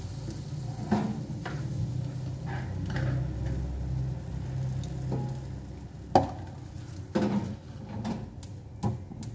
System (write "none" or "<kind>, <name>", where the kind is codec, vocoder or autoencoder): none